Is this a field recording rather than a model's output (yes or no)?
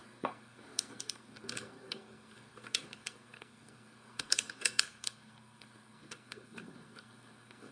no